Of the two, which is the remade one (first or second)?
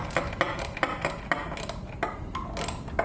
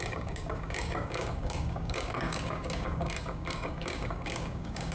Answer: second